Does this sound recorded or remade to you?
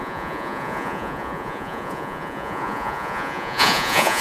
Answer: remade